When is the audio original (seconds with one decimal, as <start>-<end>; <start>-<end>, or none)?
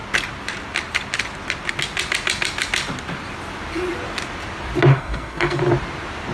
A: 0.0-4.9; 5.6-6.3